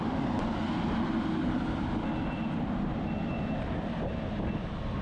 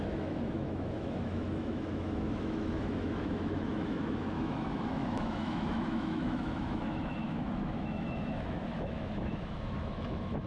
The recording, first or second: first